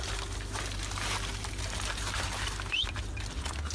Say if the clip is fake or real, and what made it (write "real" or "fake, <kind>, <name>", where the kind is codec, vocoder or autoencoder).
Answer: real